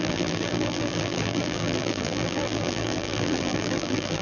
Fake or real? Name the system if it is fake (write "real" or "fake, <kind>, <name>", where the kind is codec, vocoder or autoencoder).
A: fake, vocoder, BigVGAN v2